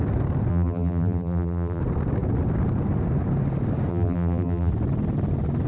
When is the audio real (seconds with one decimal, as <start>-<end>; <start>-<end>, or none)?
0.0-0.5; 1.8-3.9; 4.7-5.7